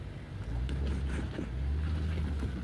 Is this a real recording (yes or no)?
yes